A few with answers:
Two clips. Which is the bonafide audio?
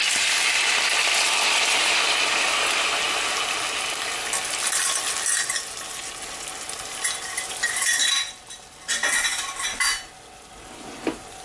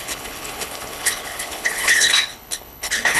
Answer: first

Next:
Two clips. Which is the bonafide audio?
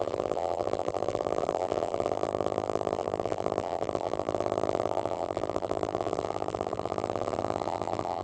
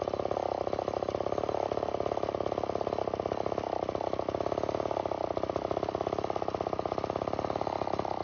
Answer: second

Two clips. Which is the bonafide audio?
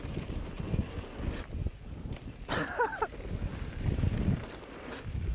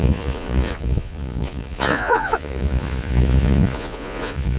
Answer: first